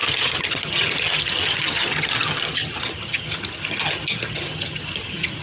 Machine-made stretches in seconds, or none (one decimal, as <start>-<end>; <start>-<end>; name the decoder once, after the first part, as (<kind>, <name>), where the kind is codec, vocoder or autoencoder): 0.0-5.4 (vocoder, HiFi-GAN)